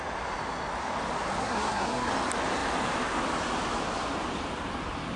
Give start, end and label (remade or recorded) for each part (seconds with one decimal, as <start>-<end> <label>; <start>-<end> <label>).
0.0-1.4 recorded; 1.4-2.1 remade; 2.1-5.2 recorded